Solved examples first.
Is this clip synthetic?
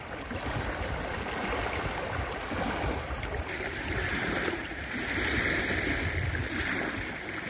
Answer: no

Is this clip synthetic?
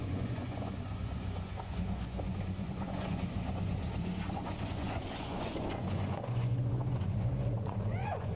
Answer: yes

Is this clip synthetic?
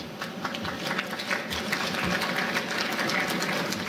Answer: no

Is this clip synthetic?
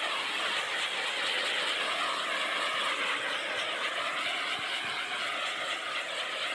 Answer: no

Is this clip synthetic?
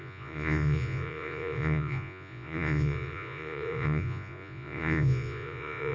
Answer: yes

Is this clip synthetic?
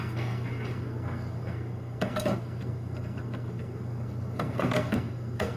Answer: yes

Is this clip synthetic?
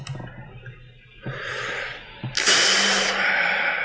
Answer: no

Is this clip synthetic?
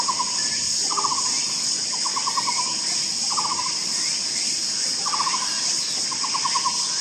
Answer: no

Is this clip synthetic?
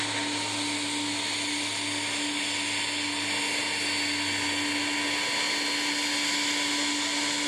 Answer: no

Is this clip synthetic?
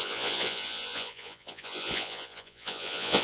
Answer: yes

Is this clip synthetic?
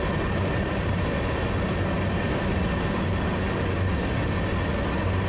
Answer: no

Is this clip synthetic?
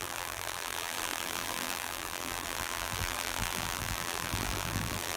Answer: yes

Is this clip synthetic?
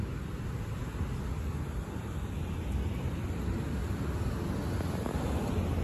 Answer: no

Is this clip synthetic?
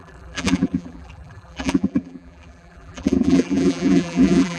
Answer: yes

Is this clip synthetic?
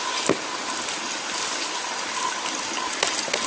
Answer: no